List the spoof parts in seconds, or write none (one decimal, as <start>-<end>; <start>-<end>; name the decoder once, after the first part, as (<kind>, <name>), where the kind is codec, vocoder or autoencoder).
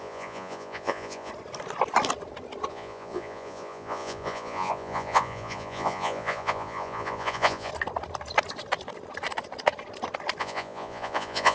0.0-1.3 (vocoder, Vocos); 2.7-7.7; 10.4-11.5